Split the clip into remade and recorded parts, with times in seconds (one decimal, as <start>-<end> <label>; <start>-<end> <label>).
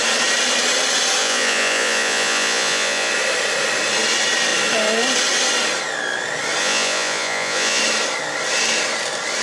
0.0-1.2 recorded; 1.2-3.1 remade; 3.1-6.6 recorded; 6.6-7.8 remade; 7.8-9.4 recorded